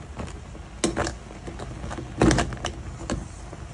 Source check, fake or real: real